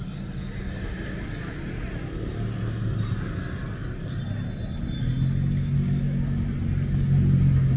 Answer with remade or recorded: recorded